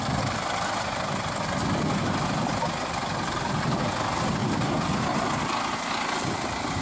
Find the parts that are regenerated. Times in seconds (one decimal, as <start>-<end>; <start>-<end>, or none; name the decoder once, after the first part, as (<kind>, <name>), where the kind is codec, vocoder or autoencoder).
none